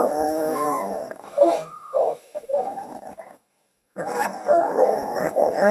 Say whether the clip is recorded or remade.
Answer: remade